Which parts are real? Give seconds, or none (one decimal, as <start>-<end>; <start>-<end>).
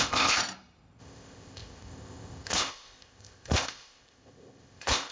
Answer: 0.4-1.0